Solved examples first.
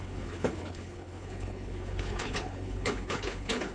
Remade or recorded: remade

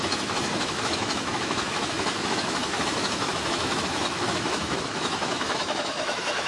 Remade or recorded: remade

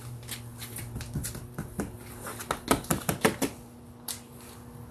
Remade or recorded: recorded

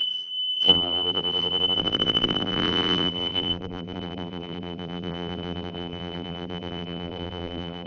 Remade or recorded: remade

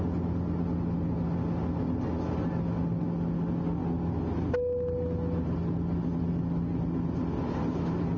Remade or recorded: recorded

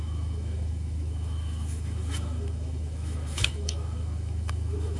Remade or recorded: remade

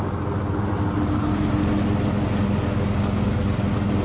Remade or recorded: recorded